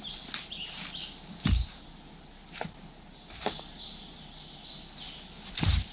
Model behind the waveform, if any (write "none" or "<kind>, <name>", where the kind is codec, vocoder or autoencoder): none